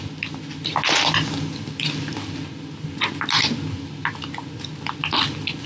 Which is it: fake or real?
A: real